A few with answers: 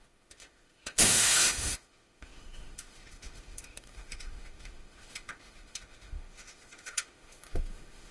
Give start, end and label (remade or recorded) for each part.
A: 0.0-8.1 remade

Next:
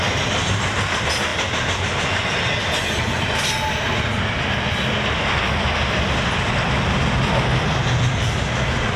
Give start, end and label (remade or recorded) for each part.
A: 0.0-9.0 recorded

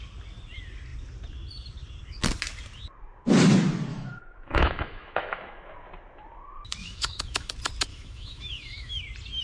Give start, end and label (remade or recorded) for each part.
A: 0.0-3.9 recorded; 3.9-5.7 remade; 5.7-6.8 recorded; 6.8-7.5 remade; 7.5-7.9 recorded; 7.9-9.0 remade; 9.0-9.4 recorded